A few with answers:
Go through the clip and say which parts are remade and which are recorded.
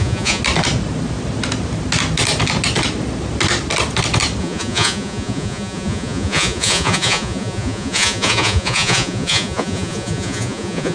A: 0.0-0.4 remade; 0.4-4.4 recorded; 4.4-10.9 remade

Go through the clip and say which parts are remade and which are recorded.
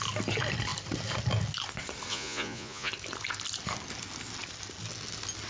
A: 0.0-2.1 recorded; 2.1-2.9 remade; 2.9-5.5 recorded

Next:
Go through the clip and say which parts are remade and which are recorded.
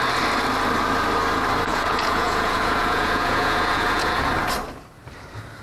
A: 0.0-1.7 recorded; 1.7-4.3 remade; 4.3-5.6 recorded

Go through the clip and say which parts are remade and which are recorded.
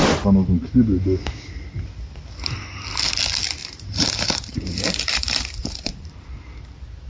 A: 0.0-3.6 recorded; 3.6-6.6 remade; 6.6-7.1 recorded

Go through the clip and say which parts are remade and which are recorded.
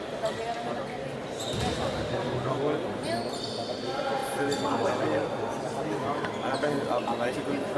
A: 0.0-7.8 recorded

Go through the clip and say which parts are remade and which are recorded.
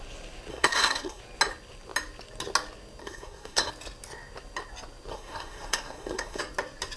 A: 0.0-0.5 recorded; 0.5-1.2 remade; 1.2-3.0 recorded; 3.0-3.7 remade; 3.7-5.1 recorded; 5.1-6.4 remade; 6.4-7.0 recorded